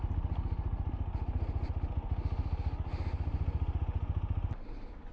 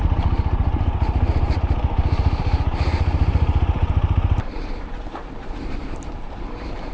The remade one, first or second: second